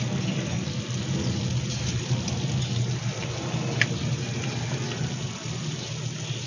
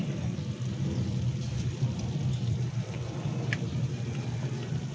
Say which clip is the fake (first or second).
second